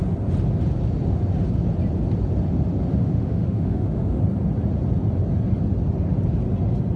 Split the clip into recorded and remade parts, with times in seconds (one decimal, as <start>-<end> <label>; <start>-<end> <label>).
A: 0.0-2.9 recorded; 2.9-4.2 remade; 4.2-7.0 recorded